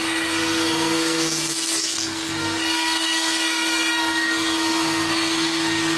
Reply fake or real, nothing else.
fake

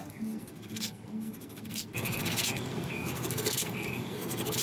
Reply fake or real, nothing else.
fake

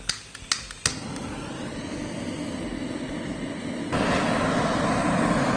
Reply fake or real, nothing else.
real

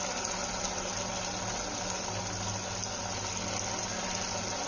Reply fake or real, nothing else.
real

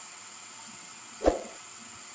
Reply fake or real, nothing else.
fake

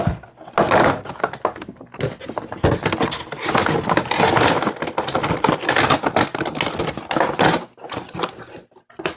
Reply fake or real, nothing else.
real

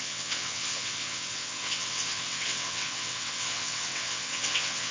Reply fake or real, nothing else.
fake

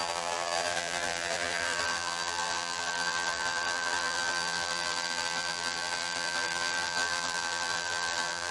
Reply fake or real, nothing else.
fake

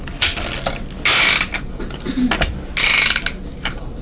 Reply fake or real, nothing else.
real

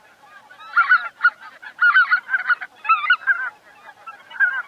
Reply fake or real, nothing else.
real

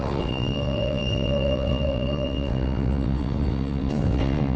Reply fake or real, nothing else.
fake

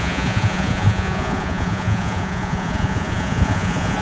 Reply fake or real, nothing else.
fake